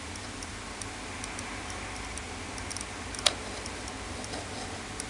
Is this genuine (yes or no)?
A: yes